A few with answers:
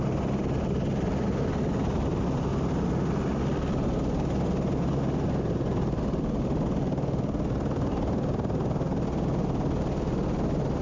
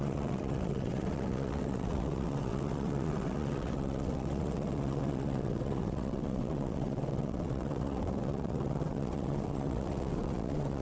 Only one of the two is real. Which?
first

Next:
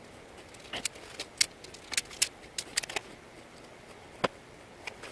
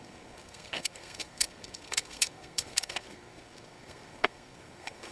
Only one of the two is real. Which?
first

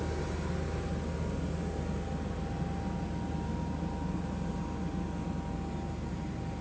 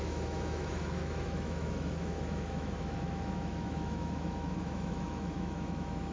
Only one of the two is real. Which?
first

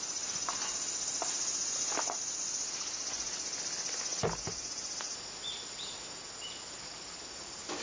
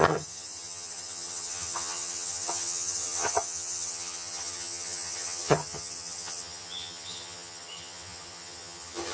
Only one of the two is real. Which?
first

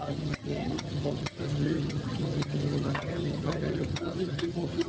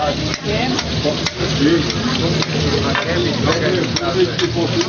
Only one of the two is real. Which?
second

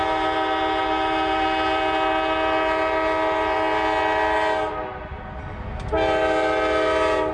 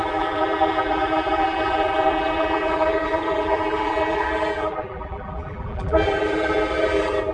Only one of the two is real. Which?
first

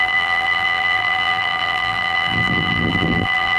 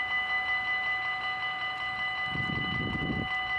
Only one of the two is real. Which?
second